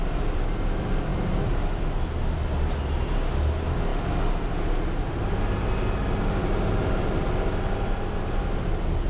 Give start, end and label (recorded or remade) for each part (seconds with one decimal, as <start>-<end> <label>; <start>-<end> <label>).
0.0-9.1 recorded